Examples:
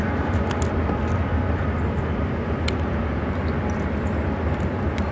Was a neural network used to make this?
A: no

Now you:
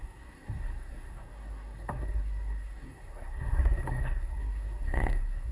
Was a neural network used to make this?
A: yes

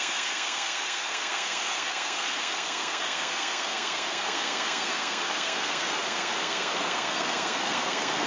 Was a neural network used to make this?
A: yes